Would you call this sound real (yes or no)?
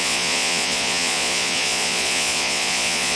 no